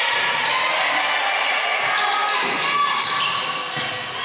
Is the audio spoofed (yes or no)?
no